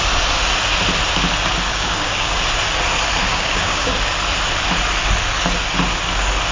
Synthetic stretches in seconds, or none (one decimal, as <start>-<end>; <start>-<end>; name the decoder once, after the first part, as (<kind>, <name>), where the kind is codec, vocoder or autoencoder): 1.7-2.3 (codec, DAC); 3.3-3.9

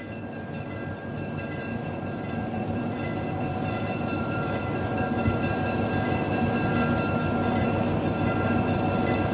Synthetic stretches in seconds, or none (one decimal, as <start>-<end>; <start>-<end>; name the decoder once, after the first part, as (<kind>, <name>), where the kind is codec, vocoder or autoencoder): 1.6-4.6 (vocoder, BigVGAN v2)

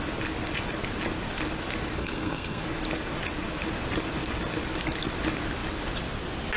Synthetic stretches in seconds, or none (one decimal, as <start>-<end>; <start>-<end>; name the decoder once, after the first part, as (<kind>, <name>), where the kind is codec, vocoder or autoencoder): 2.0-2.6 (codec, SNAC)

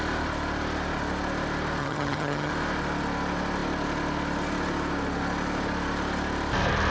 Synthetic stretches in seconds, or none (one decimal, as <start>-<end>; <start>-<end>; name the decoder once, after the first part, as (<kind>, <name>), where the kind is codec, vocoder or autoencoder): 1.8-2.5 (vocoder, HiFi-GAN)